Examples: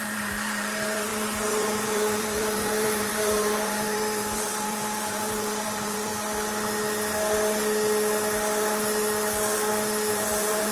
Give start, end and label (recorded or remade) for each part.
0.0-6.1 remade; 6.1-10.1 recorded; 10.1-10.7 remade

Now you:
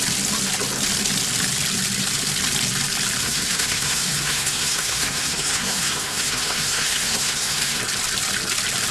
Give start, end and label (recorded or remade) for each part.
0.0-3.2 recorded; 3.2-7.8 remade; 7.8-8.9 recorded

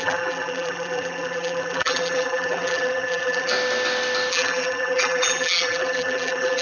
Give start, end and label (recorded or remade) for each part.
0.0-3.5 remade; 3.5-4.3 recorded; 4.3-6.6 remade